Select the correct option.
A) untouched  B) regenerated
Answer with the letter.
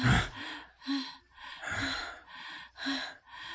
A